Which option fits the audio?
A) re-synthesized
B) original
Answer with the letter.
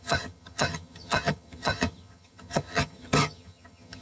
A